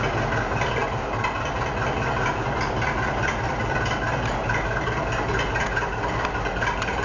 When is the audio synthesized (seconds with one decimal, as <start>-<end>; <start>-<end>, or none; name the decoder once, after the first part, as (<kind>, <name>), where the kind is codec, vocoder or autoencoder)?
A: none